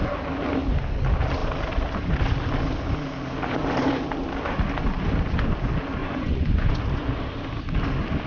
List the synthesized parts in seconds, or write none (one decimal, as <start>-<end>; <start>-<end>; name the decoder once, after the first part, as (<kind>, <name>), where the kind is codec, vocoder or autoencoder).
6.0-6.7 (vocoder, Vocos)